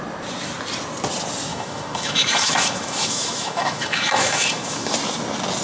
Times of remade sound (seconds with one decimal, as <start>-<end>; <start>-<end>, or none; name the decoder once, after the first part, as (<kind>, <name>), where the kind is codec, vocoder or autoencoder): 1.5-4.9 (autoencoder, DAC-VAE)